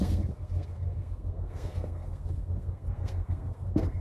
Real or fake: fake